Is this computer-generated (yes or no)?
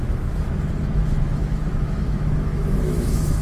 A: yes